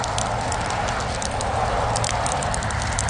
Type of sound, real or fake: real